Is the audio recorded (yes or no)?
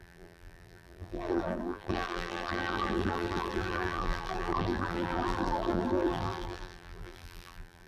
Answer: no